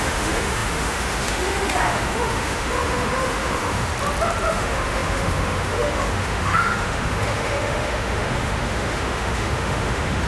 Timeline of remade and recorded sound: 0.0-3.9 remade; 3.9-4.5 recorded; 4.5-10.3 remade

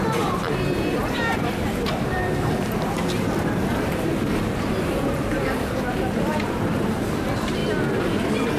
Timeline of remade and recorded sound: 0.0-7.6 remade; 7.6-8.6 recorded